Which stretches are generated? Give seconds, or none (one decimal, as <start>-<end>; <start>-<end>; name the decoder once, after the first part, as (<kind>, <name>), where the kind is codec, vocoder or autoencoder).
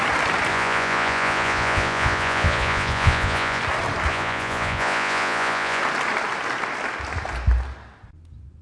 0.5-3.6 (vocoder, Vocos); 4.1-5.8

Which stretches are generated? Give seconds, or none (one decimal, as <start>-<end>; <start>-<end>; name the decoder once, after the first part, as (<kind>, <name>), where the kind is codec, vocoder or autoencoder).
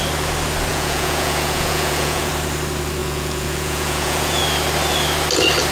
0.7-2.3 (vocoder, Vocos); 3.0-4.4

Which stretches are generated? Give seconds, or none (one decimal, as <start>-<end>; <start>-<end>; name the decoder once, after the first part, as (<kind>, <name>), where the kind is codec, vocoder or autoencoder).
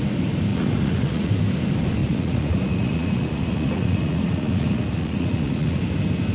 0.5-1.3 (vocoder, Vocos); 2.0-5.8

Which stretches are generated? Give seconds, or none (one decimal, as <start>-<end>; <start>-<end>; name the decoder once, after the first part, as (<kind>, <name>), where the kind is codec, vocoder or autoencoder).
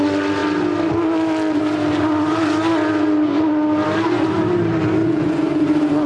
5.0-6.1 (vocoder, Vocos)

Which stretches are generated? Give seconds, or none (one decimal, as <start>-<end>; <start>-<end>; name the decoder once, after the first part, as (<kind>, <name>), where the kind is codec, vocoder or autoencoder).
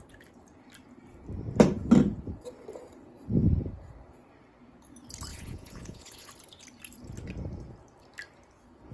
5.3-6.3 (vocoder, Vocos)